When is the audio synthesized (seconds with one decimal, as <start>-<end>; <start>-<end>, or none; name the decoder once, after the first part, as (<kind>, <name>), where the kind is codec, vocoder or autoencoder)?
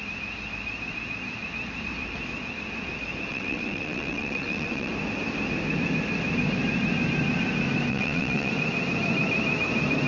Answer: 3.3-4.9 (vocoder, WaveNeXt); 7.9-8.5